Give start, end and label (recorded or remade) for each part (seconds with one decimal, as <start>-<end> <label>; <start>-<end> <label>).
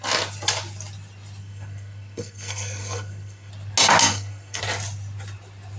0.0-1.4 recorded; 1.4-3.5 remade; 3.5-4.0 recorded; 4.0-4.6 remade; 4.6-5.8 recorded